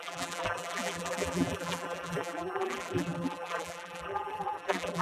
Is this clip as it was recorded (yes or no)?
no